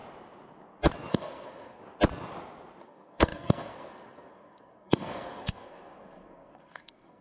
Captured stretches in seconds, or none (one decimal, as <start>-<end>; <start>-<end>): 0.0-1.1; 1.8-2.8